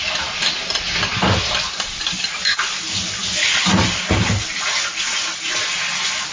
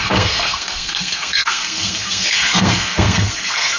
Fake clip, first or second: second